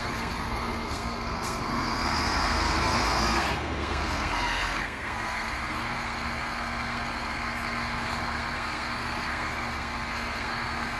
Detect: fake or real fake